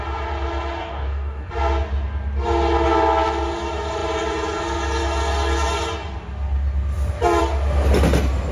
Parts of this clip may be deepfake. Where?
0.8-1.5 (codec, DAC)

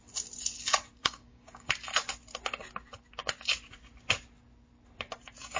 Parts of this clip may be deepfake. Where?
1.0-1.7 (codec, DAC)

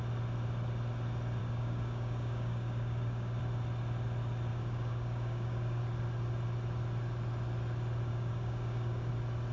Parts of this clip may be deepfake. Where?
1.4-3.4 (codec, DAC); 4.5-5.8; 8.1-9.1